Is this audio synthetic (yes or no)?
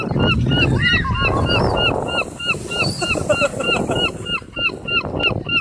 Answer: no